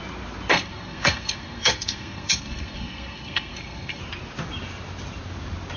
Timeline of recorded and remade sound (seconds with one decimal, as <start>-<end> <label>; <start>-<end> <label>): 0.0-0.5 recorded; 0.5-4.0 remade; 4.0-5.8 recorded